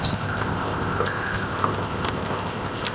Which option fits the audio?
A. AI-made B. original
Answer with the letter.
A